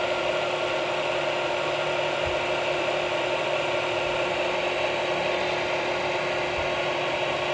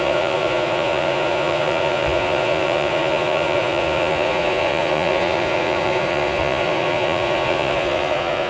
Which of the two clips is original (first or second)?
first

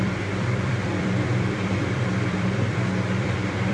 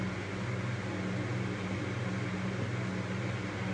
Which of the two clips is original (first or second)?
second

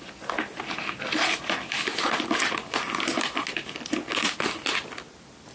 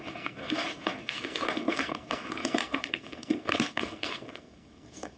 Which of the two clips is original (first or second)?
first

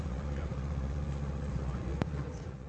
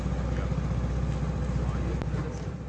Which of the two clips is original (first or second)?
second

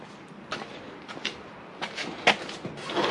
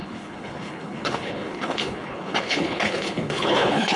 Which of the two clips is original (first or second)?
first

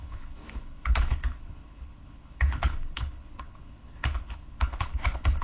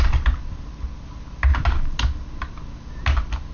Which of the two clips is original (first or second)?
second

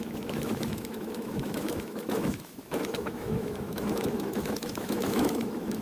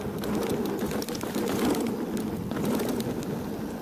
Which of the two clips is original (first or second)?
second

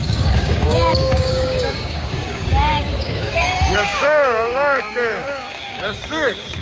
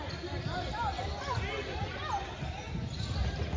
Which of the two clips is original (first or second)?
second